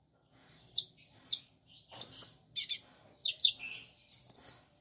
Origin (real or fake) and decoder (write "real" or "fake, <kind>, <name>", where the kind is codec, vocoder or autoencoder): fake, vocoder, BigVGAN v2